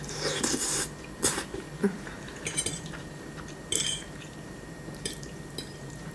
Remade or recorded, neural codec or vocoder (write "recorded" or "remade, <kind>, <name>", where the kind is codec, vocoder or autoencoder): remade, vocoder, BigVGAN v2